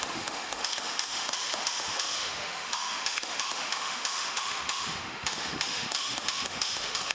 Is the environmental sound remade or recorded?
remade